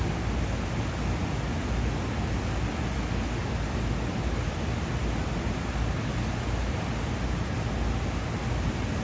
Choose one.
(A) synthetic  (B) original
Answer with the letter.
B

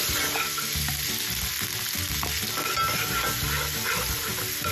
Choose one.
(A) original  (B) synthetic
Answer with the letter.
A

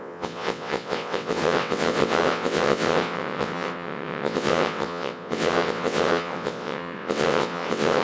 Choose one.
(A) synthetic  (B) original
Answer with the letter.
A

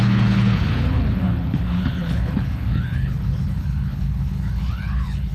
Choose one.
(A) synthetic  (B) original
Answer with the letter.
A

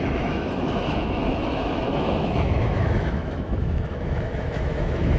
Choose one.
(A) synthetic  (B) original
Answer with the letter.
A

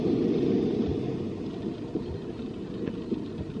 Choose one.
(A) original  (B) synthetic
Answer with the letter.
A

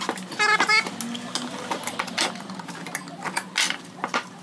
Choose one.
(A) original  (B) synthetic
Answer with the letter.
A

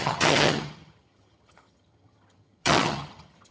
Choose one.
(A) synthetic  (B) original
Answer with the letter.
A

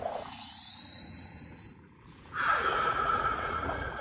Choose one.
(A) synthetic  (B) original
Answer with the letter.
A